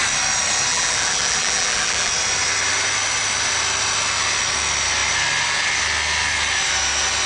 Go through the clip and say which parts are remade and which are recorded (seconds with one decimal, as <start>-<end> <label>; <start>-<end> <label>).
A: 0.0-0.7 recorded; 0.7-2.1 remade; 2.1-7.3 recorded